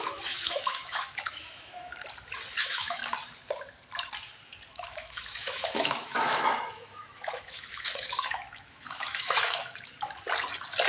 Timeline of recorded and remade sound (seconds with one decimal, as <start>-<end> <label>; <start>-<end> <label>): 0.0-1.9 remade; 1.9-2.6 recorded; 2.6-3.0 remade; 3.0-4.7 recorded; 4.7-9.9 remade; 9.9-10.9 recorded